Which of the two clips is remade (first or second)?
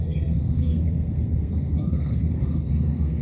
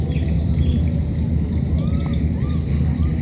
first